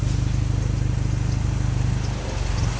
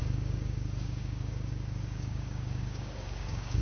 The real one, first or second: first